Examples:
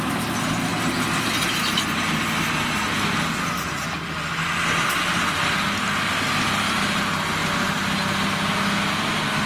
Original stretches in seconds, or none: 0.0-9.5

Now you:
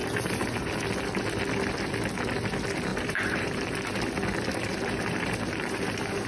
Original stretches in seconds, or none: 0.7-2.9; 3.6-4.5